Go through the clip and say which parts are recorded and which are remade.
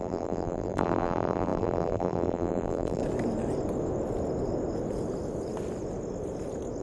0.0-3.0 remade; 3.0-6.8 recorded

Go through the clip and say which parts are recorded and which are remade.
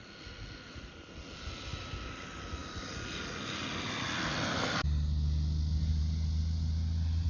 0.0-7.3 recorded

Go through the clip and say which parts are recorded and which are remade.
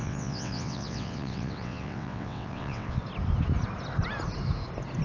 0.0-3.0 remade; 3.0-5.0 recorded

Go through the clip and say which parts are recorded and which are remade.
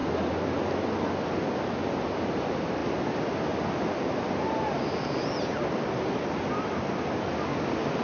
0.0-8.0 recorded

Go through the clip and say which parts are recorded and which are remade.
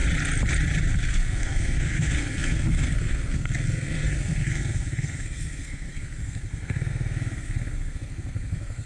0.0-0.9 recorded; 0.9-8.9 remade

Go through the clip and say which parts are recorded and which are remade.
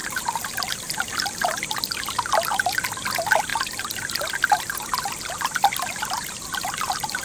0.0-1.6 remade; 1.6-7.2 recorded